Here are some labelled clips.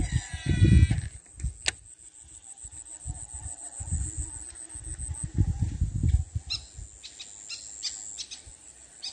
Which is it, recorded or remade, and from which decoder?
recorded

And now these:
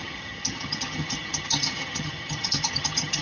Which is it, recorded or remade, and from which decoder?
remade, vocoder, HiFi-GAN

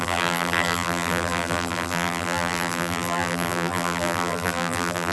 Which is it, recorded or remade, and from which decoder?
remade, vocoder, BigVGAN v2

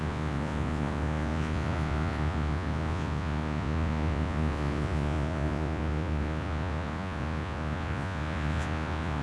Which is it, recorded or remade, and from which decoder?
remade, vocoder, Vocos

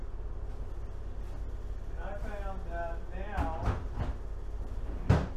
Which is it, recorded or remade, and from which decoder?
recorded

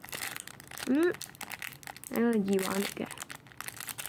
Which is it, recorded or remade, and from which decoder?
recorded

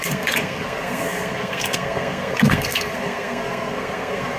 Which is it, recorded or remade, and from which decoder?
remade, codec, SNAC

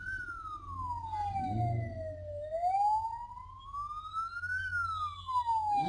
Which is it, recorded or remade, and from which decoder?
recorded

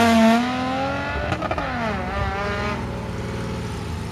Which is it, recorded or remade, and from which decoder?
recorded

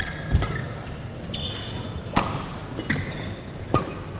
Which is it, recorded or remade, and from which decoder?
recorded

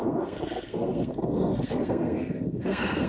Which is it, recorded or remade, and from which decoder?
remade, codec, SNAC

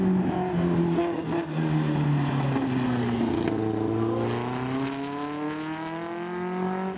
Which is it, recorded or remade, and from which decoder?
recorded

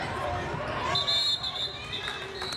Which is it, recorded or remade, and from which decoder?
remade, vocoder, BigVGAN v2